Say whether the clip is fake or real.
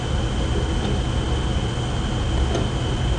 real